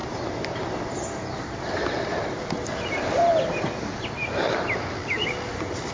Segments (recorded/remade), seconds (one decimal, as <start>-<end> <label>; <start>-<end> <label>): 0.0-1.4 recorded; 1.4-3.3 remade; 3.3-5.2 recorded; 5.2-5.9 remade